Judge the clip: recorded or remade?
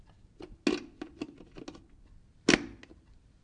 recorded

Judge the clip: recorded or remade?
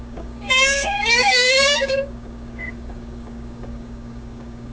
remade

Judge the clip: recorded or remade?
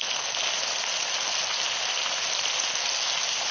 recorded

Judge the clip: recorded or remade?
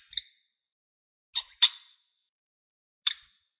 recorded